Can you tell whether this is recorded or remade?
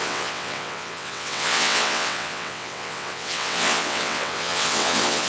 remade